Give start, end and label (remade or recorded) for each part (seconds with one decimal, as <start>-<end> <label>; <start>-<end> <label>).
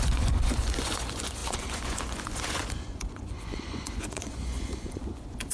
0.0-5.5 remade